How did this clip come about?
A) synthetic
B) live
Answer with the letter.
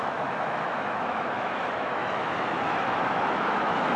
A